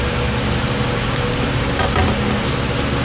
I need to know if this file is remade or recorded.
recorded